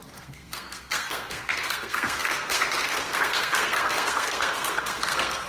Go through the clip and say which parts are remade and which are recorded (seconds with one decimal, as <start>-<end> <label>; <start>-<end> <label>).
0.0-5.5 remade